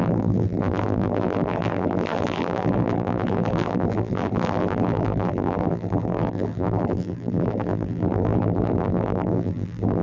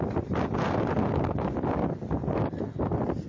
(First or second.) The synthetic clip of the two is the first